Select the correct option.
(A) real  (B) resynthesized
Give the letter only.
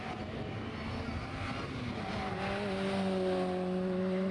A